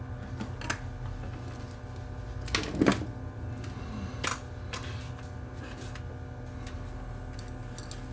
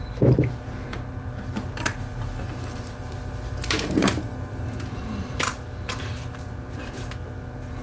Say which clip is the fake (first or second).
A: second